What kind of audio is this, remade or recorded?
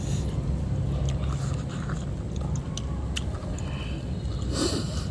recorded